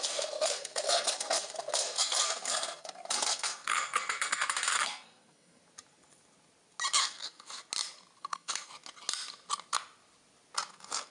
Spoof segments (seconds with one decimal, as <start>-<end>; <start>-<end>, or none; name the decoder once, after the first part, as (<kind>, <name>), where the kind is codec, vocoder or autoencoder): 0.0-5.6 (codec, SNAC); 7.0-7.6; 8.2-8.7; 10.7-11.1